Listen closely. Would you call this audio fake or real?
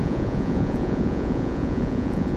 fake